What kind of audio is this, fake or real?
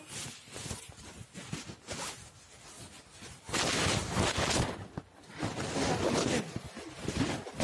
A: real